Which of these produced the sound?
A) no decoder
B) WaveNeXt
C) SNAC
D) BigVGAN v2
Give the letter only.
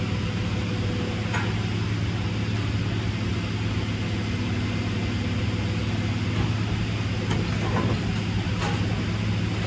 A